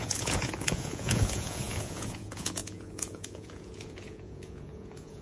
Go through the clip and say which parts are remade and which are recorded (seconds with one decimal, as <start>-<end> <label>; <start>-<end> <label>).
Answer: 0.0-5.2 remade